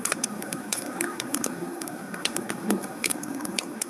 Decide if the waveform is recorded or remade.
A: remade